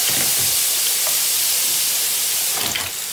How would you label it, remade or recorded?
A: recorded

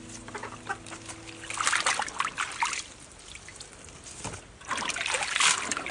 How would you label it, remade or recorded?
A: recorded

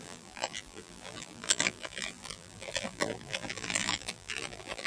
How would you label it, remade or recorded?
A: remade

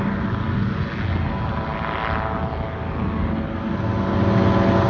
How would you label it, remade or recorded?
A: recorded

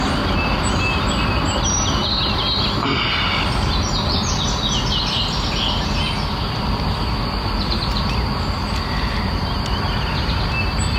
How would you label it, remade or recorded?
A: recorded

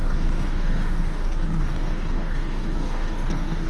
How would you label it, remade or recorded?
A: remade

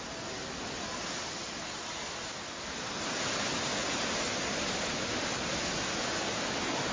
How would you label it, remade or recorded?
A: recorded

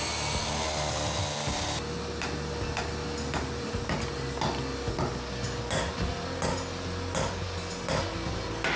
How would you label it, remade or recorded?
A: recorded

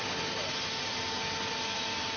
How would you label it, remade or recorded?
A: recorded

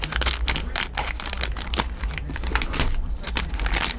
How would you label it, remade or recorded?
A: recorded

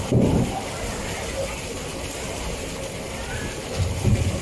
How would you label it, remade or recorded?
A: recorded